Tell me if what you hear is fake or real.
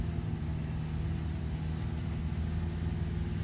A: real